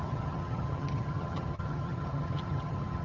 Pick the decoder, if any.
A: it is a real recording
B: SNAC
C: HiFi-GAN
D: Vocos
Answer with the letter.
C